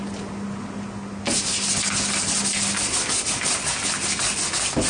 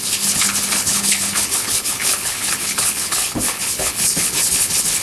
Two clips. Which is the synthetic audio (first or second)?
second